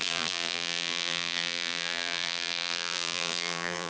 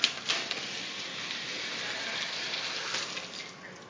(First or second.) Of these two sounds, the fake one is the first